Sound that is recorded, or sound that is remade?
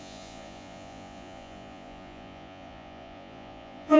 remade